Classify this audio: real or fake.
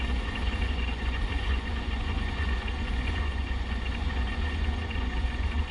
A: fake